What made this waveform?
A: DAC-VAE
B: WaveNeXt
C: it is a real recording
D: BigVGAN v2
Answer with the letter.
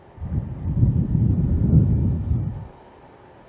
C